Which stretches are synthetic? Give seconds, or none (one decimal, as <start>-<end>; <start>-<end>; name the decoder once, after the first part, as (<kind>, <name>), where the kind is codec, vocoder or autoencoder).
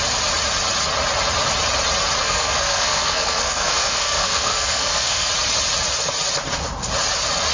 2.2-5.3 (codec, SNAC)